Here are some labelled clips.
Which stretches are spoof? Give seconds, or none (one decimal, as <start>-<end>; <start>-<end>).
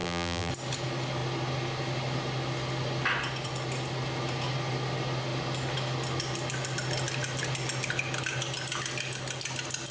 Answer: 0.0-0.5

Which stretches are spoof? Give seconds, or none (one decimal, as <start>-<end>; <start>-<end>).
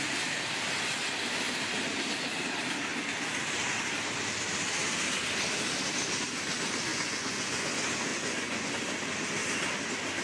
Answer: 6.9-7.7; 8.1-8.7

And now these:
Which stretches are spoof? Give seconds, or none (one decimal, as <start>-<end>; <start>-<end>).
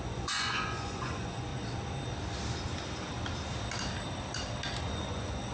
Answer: 0.0-1.5; 4.8-5.5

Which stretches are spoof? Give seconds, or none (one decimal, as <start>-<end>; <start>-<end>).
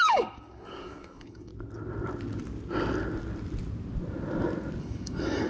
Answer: 0.0-1.5; 4.8-5.5